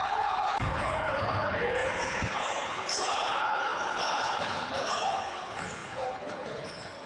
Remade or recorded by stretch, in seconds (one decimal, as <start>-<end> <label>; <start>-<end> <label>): 0.0-7.1 remade